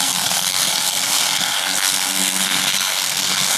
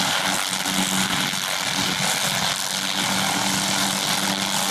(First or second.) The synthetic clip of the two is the first